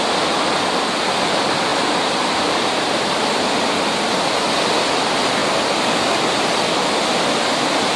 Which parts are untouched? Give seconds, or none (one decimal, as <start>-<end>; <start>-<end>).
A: 0.0-1.7; 3.2-8.0